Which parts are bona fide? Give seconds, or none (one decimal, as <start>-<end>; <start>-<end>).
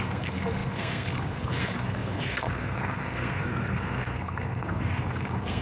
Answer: none